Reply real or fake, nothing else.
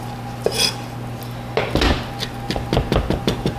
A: real